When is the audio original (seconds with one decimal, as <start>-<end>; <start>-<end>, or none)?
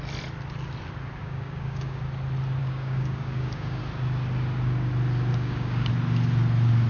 0.0-1.2; 2.0-2.6; 3.8-5.3; 5.9-6.9